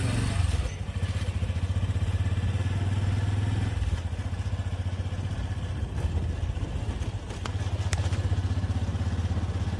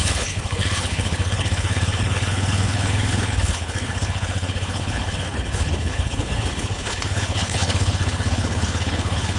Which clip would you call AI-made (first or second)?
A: second